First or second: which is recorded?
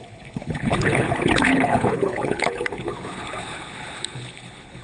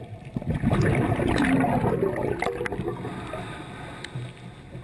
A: second